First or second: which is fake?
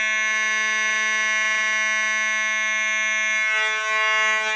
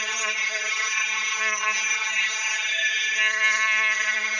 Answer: second